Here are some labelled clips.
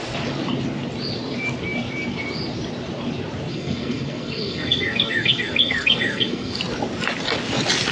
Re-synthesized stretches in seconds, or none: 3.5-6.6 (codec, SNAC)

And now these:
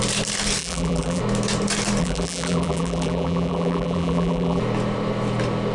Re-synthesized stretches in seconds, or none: 0.6-1.2 (vocoder, BigVGAN v2); 2.0-4.6

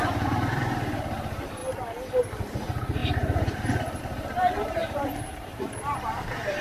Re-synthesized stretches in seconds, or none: 0.0-1.6 (vocoder, BigVGAN v2); 2.2-6.6